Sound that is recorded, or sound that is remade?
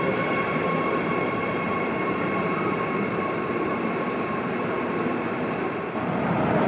remade